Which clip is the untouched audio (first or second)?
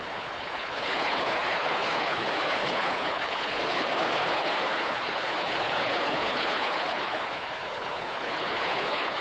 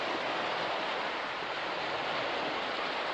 second